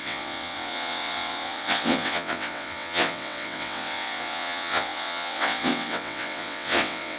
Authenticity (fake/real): fake